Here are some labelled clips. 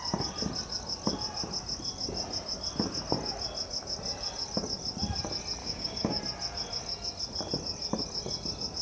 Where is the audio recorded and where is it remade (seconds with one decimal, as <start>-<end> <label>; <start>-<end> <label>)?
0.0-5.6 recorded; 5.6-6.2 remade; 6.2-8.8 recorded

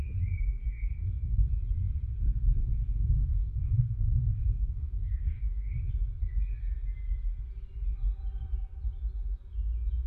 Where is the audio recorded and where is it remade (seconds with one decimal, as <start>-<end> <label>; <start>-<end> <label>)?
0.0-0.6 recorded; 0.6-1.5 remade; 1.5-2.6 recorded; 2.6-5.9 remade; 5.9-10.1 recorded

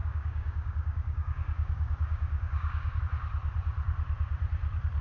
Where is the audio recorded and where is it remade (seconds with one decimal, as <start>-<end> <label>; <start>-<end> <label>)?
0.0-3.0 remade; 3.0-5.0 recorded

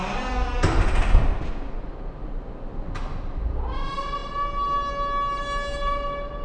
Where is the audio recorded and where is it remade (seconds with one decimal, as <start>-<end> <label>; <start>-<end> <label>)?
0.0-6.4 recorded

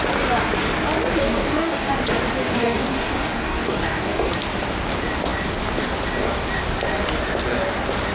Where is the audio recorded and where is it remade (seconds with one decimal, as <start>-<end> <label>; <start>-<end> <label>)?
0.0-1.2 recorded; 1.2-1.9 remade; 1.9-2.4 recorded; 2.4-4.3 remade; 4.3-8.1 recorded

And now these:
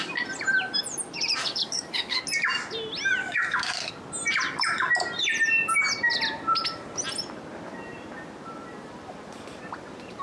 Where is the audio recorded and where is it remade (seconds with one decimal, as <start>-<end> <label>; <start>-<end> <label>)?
0.0-1.4 recorded; 1.4-2.2 remade; 2.2-3.2 recorded; 3.2-3.9 remade; 3.9-10.2 recorded

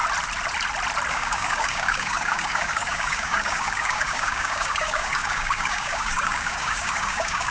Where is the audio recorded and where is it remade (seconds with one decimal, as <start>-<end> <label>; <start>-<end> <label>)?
0.0-1.1 recorded; 1.1-7.5 remade